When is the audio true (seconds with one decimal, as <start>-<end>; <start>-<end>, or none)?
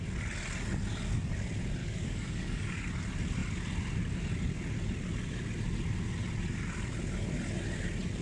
0.0-1.8; 2.9-8.2